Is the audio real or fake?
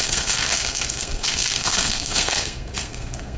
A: fake